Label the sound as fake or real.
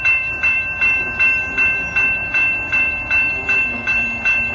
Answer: fake